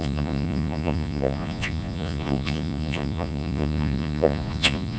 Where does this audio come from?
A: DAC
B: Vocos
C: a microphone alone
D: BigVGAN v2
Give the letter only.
B